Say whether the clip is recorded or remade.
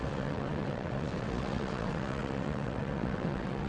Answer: remade